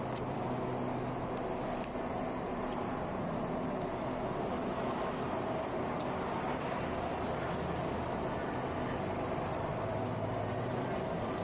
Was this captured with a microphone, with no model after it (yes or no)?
yes